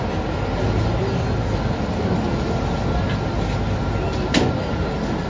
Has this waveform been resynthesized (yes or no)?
no